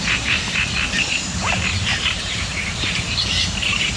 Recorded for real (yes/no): no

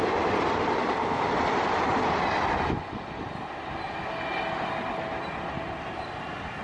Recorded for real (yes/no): yes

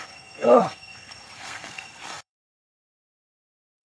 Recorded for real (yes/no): no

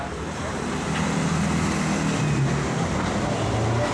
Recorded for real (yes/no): yes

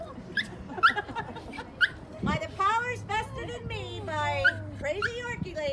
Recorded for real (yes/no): yes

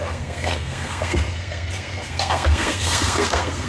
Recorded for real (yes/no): no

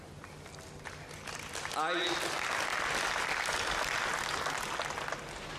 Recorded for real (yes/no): yes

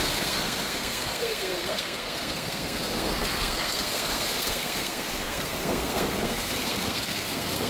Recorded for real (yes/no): no